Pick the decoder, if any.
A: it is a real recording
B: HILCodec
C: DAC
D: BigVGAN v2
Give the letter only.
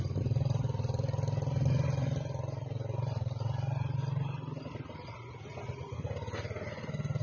A